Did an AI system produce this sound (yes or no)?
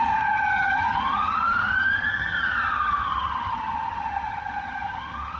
yes